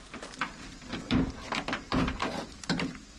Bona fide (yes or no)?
no